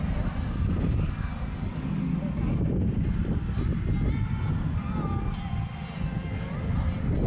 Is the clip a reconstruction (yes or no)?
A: no